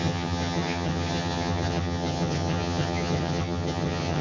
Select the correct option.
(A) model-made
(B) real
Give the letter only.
A